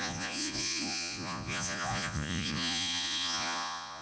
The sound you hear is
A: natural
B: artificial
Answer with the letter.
B